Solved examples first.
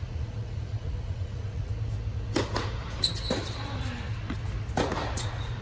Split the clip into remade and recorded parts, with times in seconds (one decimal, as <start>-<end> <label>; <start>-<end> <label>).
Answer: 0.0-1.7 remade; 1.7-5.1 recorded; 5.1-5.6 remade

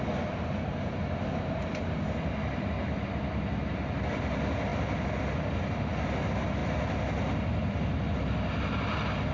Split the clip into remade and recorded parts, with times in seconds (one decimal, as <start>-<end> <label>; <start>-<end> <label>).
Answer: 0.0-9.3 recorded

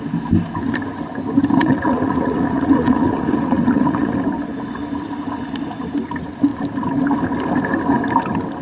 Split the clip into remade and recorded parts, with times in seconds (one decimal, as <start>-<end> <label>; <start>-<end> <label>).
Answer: 0.0-1.6 recorded; 1.6-4.1 remade; 4.1-8.6 recorded

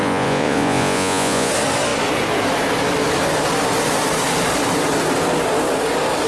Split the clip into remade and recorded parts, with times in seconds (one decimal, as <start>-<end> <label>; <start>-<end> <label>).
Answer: 0.0-1.5 remade; 1.5-6.3 recorded